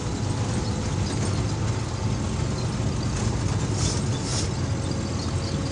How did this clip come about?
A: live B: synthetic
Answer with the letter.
A